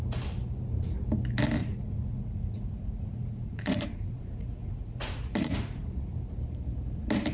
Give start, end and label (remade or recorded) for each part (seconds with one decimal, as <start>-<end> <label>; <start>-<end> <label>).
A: 0.0-1.6 recorded; 1.6-6.0 remade; 6.0-7.3 recorded